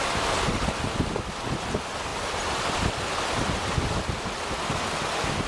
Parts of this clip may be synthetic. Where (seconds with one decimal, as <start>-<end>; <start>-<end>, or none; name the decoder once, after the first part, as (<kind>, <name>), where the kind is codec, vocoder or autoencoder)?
none